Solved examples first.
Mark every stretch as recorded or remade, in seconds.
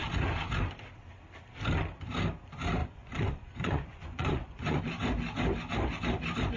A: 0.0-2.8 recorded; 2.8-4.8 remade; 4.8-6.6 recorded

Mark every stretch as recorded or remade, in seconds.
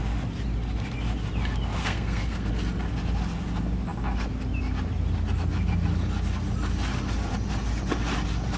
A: 0.0-1.8 recorded; 1.8-2.5 remade; 2.5-8.6 recorded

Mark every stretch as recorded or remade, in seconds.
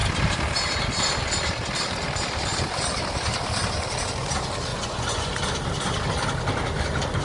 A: 0.0-4.7 recorded; 4.7-5.3 remade; 5.3-7.2 recorded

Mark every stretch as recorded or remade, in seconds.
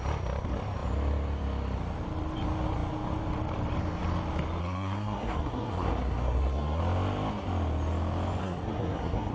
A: 0.0-4.6 recorded; 4.6-6.8 remade; 6.8-8.4 recorded; 8.4-9.3 remade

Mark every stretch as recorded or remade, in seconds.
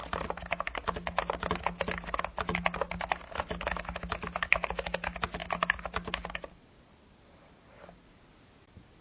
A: 0.0-9.0 recorded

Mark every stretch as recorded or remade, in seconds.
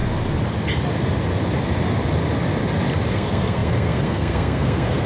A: 0.0-3.1 recorded; 3.1-5.1 remade